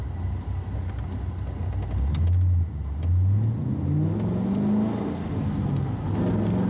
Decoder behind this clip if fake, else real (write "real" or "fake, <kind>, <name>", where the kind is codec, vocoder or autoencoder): real